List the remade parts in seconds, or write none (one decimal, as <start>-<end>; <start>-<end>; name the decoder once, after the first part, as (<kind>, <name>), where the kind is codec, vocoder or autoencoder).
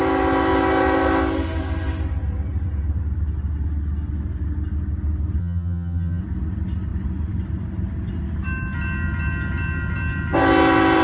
5.4-6.2 (vocoder, HiFi-GAN)